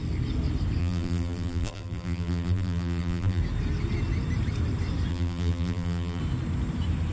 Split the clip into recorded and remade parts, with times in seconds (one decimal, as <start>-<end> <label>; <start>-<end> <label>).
0.0-0.8 recorded; 0.8-3.4 remade; 3.4-5.1 recorded; 5.1-6.2 remade; 6.2-7.1 recorded